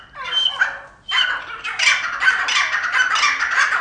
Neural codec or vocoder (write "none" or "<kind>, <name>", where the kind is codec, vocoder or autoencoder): none